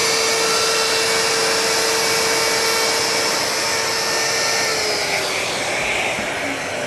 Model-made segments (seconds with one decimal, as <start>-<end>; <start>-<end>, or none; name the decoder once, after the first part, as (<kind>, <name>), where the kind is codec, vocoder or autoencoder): none